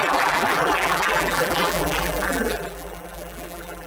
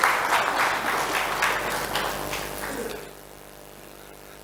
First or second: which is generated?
first